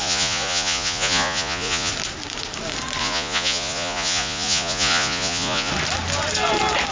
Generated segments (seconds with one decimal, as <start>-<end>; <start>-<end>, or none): 0.0-1.9; 3.0-5.7